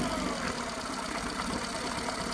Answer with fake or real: real